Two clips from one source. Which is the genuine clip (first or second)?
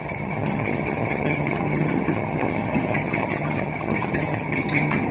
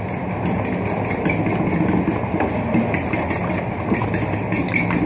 second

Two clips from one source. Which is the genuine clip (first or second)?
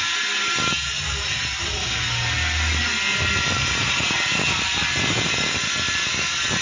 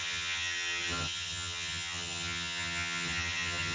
first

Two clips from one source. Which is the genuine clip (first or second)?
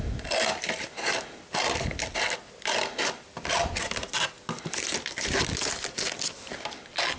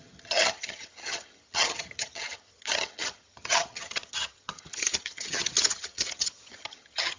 first